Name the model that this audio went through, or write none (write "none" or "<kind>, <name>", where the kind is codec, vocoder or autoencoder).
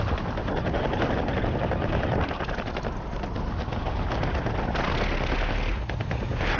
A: none